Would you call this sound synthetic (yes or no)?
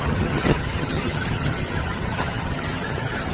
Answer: yes